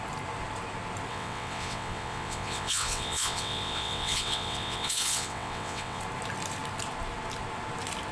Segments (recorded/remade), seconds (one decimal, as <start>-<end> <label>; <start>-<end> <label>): 0.0-1.1 recorded; 1.1-6.0 remade; 6.0-8.1 recorded